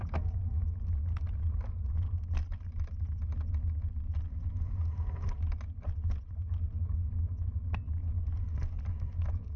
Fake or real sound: real